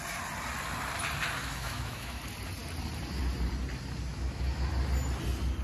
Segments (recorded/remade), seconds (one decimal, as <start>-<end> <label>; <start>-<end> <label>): 0.0-1.4 recorded; 1.4-2.2 remade; 2.2-4.1 recorded; 4.1-4.7 remade; 4.7-5.6 recorded